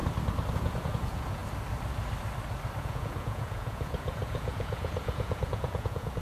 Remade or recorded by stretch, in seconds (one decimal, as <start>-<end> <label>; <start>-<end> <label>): 0.0-0.5 recorded; 0.5-1.4 remade; 1.4-2.8 recorded; 2.8-6.2 remade